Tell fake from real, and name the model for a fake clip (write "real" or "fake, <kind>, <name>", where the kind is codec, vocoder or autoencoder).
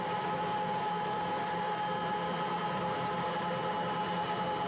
real